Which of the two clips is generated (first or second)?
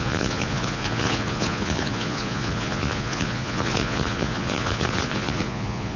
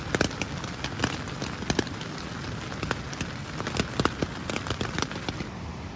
first